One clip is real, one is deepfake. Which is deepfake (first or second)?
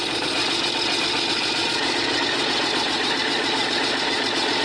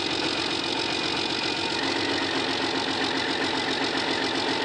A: first